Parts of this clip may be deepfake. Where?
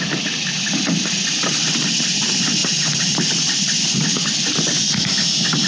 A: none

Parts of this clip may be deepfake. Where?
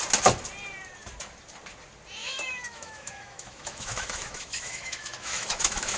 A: 2.2-6.0 (autoencoder, DAC-VAE)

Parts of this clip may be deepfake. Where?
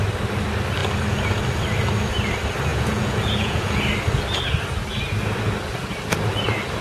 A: 2.7-3.8 (vocoder, Vocos)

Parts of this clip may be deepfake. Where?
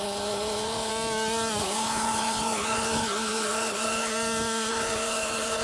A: 0.0-0.9 (codec, HILCodec); 1.6-4.1; 4.7-5.6